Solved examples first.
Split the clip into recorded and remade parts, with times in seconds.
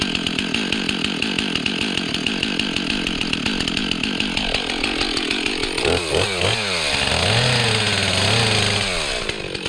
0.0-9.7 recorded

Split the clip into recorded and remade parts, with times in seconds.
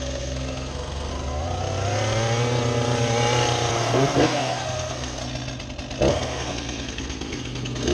0.0-1.1 remade; 1.1-3.7 recorded; 3.7-5.2 remade; 5.2-6.1 recorded; 6.1-7.9 remade